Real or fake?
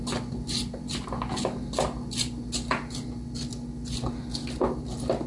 real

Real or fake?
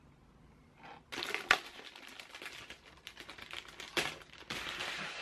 real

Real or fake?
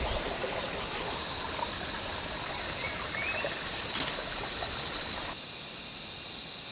real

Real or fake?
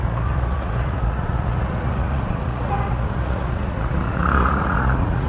fake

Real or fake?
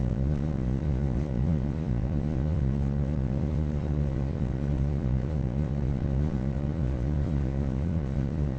fake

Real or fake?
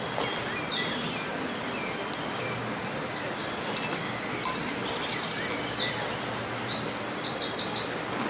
real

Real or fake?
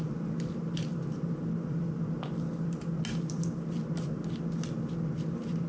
real